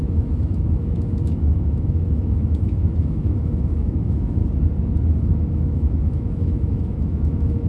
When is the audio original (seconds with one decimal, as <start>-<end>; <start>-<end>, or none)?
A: 4.4-5.2